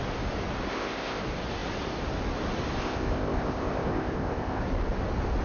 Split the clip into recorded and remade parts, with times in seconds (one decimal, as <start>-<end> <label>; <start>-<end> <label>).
0.0-0.7 recorded; 0.7-1.2 remade; 1.2-2.8 recorded; 2.8-4.6 remade; 4.6-5.4 recorded